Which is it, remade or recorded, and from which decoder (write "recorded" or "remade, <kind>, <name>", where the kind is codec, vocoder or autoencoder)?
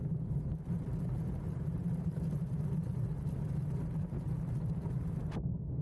recorded